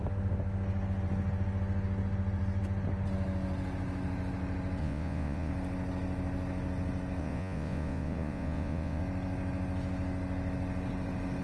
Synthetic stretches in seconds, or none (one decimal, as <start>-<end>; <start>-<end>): 4.8-5.5; 7.2-9.0